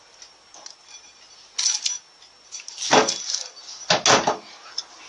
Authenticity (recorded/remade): recorded